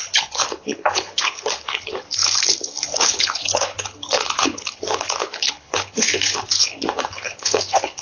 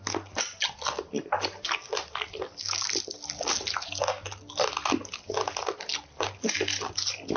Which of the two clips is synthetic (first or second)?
first